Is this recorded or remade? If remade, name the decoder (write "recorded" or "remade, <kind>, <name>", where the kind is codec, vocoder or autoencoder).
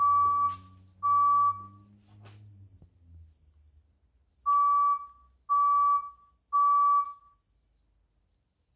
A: recorded